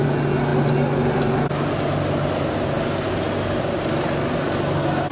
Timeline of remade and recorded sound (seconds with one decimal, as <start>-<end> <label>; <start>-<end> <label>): 0.0-5.1 recorded